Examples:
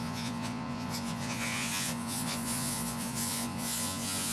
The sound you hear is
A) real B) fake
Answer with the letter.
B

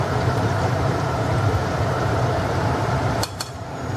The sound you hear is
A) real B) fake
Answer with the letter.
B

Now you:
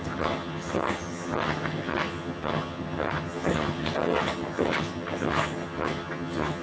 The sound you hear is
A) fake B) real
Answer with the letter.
A